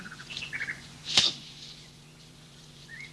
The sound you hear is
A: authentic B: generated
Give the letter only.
B